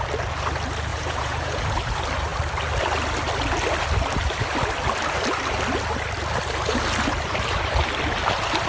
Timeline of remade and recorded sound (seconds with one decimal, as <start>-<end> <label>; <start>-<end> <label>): 0.0-0.9 recorded; 0.9-1.6 remade; 1.6-8.7 recorded